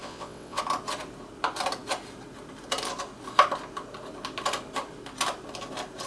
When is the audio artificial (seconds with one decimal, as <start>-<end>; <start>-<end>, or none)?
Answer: 0.0-0.6